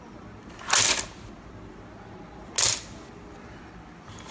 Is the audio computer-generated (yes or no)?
no